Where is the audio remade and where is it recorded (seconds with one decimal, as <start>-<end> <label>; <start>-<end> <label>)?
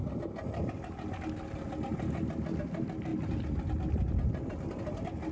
0.0-5.3 recorded